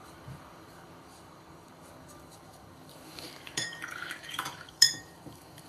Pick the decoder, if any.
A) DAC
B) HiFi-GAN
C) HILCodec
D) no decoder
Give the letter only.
A